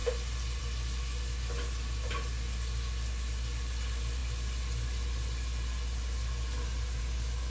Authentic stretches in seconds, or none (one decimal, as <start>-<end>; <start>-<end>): 0.0-7.5